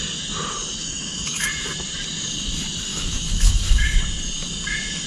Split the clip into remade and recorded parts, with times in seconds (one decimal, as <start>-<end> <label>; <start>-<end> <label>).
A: 0.0-0.8 recorded; 0.8-1.5 remade; 1.5-2.9 recorded; 2.9-4.0 remade; 4.0-5.1 recorded